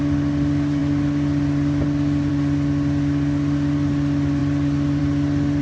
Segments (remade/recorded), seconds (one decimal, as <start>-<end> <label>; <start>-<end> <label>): 0.0-5.6 recorded